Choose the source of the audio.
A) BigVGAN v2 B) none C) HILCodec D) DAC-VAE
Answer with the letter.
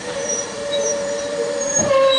A